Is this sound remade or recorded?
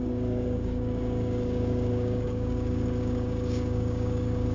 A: remade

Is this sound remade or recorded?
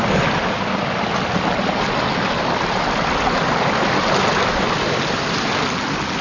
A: recorded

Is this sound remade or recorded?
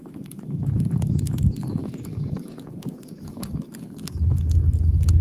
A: remade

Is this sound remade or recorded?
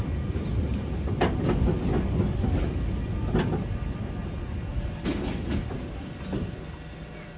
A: recorded